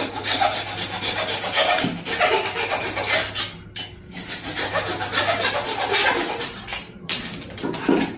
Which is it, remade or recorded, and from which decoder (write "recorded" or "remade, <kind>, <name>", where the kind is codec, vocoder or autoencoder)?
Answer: recorded